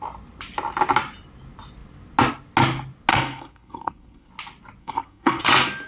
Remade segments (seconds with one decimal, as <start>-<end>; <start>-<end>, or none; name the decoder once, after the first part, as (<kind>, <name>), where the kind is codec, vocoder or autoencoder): 3.1-4.3 (codec, SNAC); 4.8-5.4